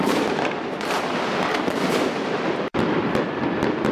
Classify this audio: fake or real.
fake